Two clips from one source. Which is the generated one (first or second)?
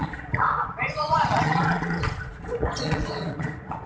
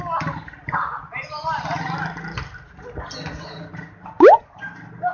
first